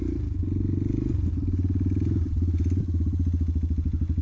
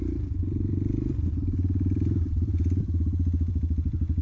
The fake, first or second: second